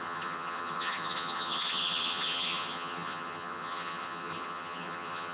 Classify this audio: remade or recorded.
remade